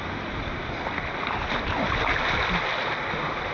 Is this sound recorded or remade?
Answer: recorded